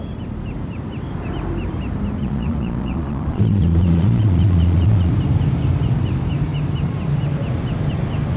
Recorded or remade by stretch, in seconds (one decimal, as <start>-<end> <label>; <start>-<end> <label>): 0.0-2.2 recorded; 2.2-5.1 remade; 5.1-8.4 recorded